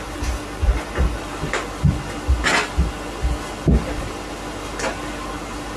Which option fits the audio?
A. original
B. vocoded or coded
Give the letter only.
A